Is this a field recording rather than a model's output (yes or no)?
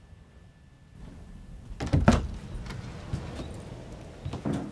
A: yes